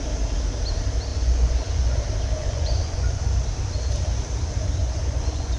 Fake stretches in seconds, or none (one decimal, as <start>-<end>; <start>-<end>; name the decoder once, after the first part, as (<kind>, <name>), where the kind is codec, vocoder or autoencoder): 1.1-2.0 (vocoder, Vocos); 2.4-3.3; 4.8-5.6